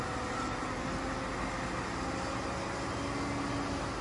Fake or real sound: real